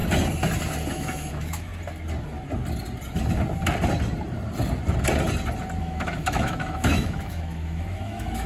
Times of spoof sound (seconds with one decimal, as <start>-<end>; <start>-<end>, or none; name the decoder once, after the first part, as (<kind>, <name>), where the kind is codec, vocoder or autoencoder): 0.9-1.7 (autoencoder, DAC-VAE); 5.8-8.5